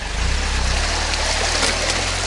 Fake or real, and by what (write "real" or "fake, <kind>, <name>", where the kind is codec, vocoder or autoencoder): real